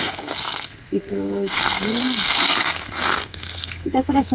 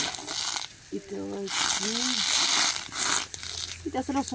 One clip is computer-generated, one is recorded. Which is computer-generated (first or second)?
first